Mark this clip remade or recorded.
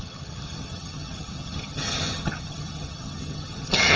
remade